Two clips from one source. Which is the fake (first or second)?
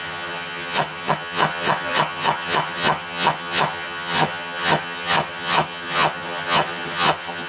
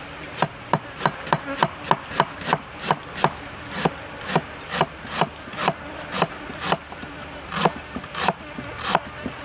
first